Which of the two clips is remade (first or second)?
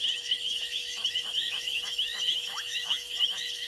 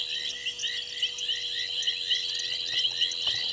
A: first